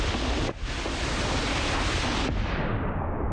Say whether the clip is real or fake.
real